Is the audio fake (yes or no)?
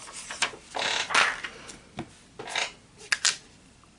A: no